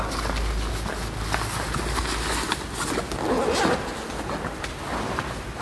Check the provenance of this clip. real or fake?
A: real